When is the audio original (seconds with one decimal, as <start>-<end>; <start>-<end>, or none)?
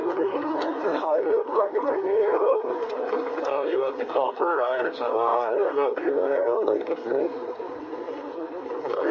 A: none